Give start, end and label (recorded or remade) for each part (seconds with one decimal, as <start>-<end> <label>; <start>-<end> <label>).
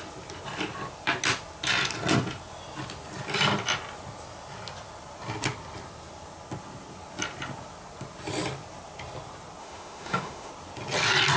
0.0-9.6 recorded; 9.6-10.5 remade; 10.5-11.4 recorded